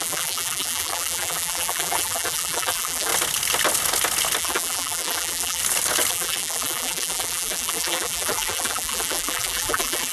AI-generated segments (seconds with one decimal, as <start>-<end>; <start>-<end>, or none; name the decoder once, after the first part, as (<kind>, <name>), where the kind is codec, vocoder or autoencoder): 0.0-3.1 (vocoder, BigVGAN v2); 4.4-5.6; 6.1-10.1